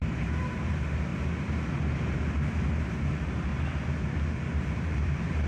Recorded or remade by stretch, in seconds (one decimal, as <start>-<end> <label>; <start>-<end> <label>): 0.0-1.1 remade; 1.1-3.1 recorded; 3.1-3.5 remade; 3.5-4.6 recorded; 4.6-5.5 remade